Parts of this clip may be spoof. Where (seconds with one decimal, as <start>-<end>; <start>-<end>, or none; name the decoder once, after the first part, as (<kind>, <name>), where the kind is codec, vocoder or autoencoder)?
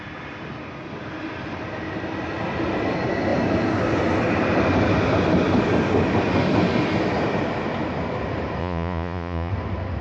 8.6-9.5 (vocoder, Vocos)